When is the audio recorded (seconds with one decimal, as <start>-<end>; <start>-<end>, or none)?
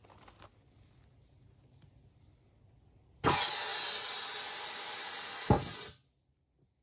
0.0-6.8